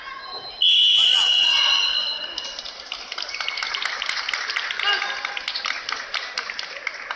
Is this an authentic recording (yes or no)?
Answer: yes